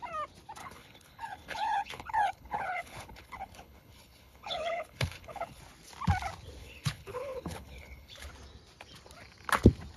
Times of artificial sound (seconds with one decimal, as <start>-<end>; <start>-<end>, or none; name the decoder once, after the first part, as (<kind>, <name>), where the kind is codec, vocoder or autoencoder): 0.6-5.6 (codec, HILCodec); 6.6-8.3